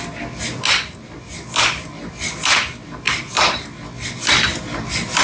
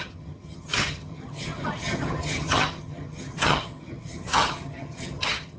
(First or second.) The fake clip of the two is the second